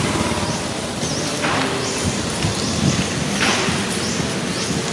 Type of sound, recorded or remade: recorded